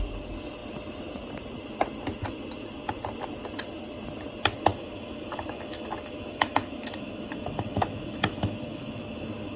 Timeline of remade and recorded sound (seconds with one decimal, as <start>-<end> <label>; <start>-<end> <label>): 0.0-4.7 recorded; 4.7-9.6 remade